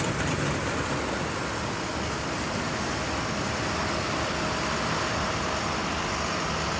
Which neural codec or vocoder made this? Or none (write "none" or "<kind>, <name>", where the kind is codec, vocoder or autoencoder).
none